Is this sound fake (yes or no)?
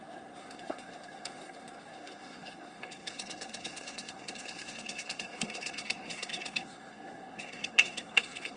yes